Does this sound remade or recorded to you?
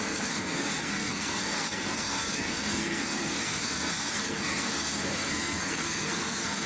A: remade